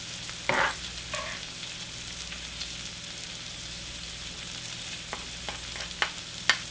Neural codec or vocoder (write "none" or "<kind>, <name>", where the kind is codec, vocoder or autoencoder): none